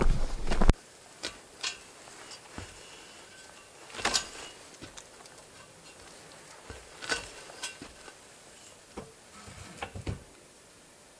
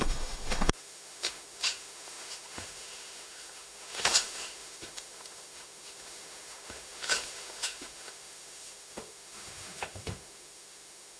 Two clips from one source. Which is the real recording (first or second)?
first